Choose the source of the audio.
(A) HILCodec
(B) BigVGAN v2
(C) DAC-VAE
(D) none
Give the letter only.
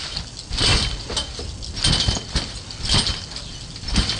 D